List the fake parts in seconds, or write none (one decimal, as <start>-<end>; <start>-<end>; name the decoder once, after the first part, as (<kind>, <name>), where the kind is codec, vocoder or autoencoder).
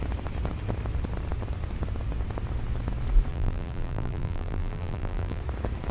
3.3-5.4 (vocoder, BigVGAN v2)